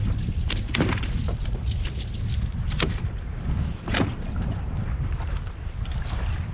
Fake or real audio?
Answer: fake